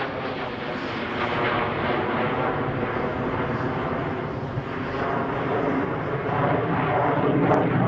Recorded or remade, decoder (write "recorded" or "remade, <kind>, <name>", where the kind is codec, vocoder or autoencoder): recorded